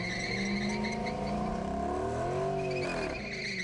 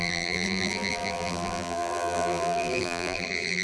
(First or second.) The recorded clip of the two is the first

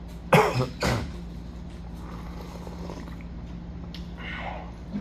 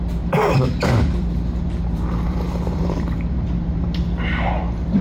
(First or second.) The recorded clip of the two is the first